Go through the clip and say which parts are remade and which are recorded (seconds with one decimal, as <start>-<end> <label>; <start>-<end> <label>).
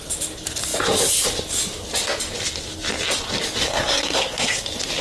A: 0.0-3.6 recorded; 3.6-4.6 remade; 4.6-5.0 recorded